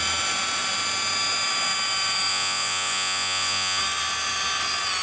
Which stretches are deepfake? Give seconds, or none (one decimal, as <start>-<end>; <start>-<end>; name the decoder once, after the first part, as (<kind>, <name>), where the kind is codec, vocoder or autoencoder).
2.3-3.8 (vocoder, Vocos)